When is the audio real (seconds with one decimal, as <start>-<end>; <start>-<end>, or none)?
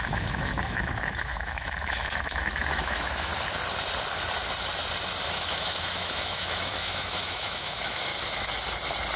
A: 3.3-5.3; 8.1-9.2